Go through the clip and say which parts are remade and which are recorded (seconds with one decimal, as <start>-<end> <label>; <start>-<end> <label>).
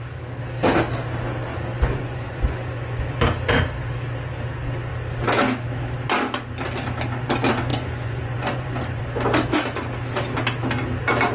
0.0-1.5 recorded; 1.5-3.0 remade; 3.0-7.7 recorded; 7.7-9.0 remade; 9.0-11.3 recorded